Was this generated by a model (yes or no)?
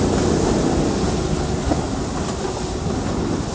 no